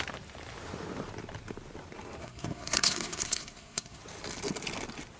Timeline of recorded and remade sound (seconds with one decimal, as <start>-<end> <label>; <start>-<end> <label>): 0.0-2.2 recorded; 2.2-4.0 remade; 4.0-5.2 recorded